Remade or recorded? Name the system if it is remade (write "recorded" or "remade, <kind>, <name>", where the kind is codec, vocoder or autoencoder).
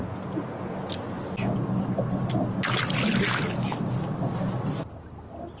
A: recorded